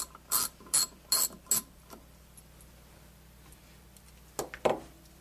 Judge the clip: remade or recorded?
recorded